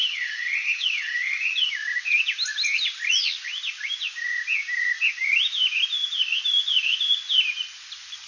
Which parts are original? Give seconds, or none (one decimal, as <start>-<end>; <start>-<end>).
1.7-8.3